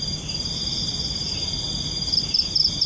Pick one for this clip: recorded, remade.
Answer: recorded